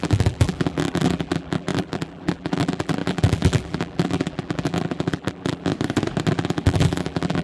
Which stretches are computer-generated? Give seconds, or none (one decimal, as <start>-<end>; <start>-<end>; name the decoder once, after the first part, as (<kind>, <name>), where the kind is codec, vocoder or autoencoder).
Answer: 0.0-5.7 (vocoder, BigVGAN v2); 6.3-7.4